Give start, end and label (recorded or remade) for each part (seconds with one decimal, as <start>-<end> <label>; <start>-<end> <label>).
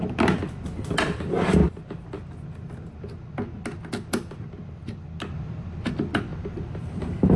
0.0-6.3 recorded; 6.3-7.4 remade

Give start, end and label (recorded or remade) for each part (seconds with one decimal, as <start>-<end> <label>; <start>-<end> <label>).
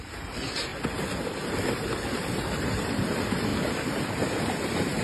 0.0-0.7 remade; 0.7-2.1 recorded; 2.1-5.0 remade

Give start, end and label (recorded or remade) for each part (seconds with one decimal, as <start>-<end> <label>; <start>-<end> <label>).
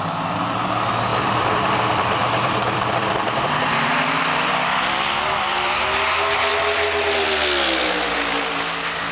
0.0-1.1 recorded; 1.1-5.8 remade; 5.8-9.1 recorded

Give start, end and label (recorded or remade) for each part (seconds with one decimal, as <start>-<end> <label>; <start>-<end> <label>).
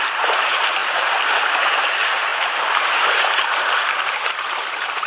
0.0-5.1 remade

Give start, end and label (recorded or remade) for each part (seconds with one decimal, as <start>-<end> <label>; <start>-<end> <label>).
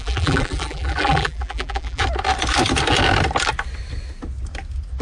0.0-2.0 remade; 2.0-5.0 recorded